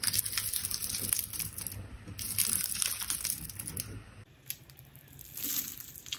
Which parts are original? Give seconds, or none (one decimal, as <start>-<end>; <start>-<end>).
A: 0.0-6.2